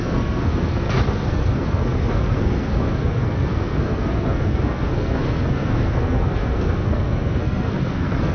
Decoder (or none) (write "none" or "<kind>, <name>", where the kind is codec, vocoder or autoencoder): codec, SNAC